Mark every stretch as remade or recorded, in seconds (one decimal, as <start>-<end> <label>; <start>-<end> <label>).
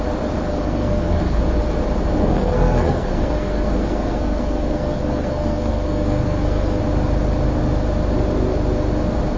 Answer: 0.0-0.5 recorded; 0.5-1.4 remade; 1.4-2.2 recorded; 2.2-6.8 remade; 6.8-9.4 recorded